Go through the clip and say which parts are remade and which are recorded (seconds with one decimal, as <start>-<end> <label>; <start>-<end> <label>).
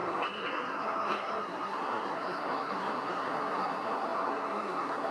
0.0-5.1 remade